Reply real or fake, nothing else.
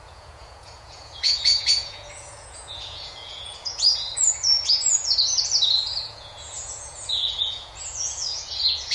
fake